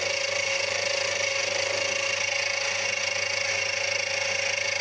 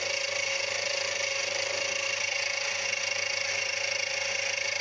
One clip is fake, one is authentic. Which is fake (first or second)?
second